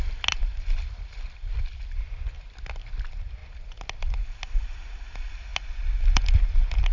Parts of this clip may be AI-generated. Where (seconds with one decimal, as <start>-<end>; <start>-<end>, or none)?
none